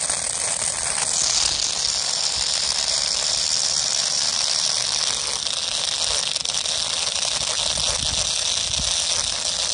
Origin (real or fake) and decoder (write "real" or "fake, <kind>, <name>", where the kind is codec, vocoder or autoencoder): real